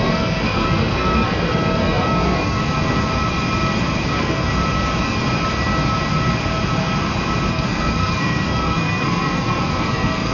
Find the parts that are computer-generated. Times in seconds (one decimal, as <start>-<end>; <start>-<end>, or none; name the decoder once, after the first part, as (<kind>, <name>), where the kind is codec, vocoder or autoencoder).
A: 0.0-2.6 (codec, SNAC); 4.0-4.5; 7.5-10.3

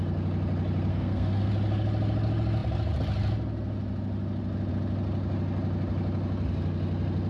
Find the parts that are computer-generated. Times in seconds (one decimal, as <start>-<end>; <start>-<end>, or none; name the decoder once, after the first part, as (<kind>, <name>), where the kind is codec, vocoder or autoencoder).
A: 0.9-1.5 (codec, SNAC)

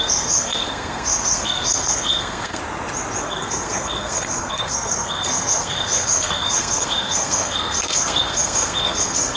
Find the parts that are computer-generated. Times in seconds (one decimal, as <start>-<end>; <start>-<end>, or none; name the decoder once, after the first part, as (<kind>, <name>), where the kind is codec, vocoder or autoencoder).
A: 0.0-2.6 (codec, SNAC); 3.2-9.4

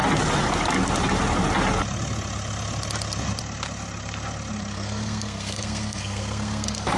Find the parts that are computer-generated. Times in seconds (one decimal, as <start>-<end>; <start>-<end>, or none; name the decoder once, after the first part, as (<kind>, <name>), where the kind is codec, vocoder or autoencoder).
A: 4.7-7.0 (codec, SNAC)

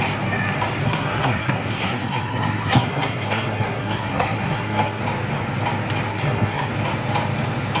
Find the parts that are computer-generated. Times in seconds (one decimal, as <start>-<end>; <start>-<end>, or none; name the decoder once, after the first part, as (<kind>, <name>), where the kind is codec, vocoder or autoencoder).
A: 0.8-5.0 (codec, SNAC); 6.1-6.7

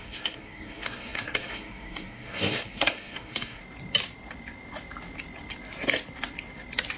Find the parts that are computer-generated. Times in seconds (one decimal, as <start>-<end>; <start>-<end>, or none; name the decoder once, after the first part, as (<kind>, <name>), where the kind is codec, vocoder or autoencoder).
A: 0.0-3.6 (codec, SNAC)

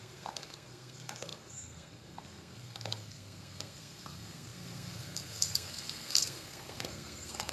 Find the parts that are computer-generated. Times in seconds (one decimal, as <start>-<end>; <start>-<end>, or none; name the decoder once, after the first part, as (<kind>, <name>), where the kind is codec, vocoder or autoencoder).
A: 0.0-7.5 (codec, SNAC)

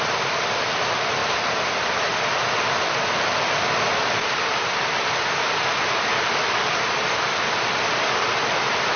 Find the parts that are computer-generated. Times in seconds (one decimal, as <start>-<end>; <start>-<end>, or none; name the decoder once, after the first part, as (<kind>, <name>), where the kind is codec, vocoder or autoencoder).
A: none